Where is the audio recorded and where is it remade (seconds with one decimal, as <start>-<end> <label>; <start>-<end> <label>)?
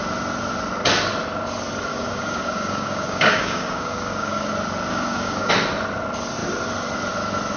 0.0-1.9 recorded; 1.9-4.5 remade; 4.5-4.9 recorded; 4.9-5.5 remade; 5.5-7.6 recorded